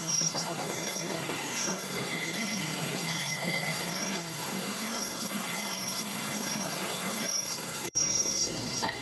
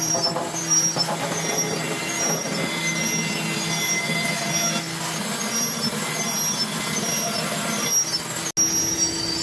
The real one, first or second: second